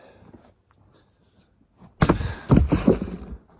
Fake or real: real